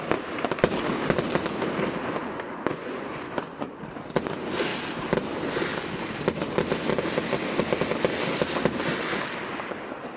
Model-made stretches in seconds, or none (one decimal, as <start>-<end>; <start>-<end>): 2.2-3.7